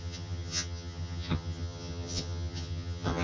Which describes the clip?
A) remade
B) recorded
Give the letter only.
A